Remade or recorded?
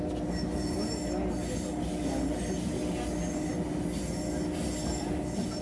recorded